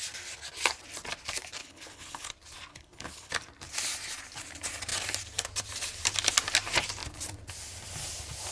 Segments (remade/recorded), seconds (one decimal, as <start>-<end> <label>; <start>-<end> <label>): 0.0-1.6 recorded; 1.6-2.3 remade; 2.3-2.7 recorded; 2.7-3.3 remade; 3.3-8.5 recorded